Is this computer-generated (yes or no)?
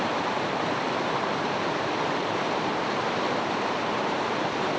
yes